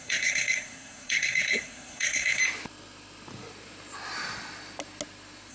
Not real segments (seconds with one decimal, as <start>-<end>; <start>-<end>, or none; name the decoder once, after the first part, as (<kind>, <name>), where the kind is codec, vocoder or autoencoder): 0.0-2.4 (codec, SNAC)